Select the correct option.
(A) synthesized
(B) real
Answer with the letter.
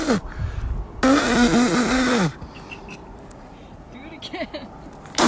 B